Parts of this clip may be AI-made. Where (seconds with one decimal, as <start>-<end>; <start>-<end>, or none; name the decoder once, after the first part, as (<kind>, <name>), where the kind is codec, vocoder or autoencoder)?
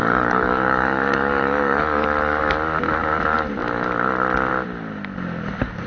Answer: 0.0-2.4 (codec, DAC)